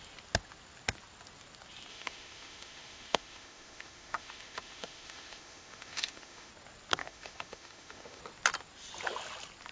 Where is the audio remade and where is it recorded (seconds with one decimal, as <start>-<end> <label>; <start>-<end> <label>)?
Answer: 0.0-1.9 recorded; 1.9-6.5 remade; 6.5-7.0 recorded; 7.0-8.2 remade; 8.2-9.7 recorded